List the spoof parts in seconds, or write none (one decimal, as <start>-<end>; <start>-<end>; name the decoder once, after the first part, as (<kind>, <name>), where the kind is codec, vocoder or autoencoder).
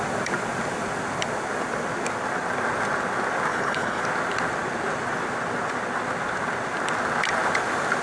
3.5-4.0 (codec, HILCodec)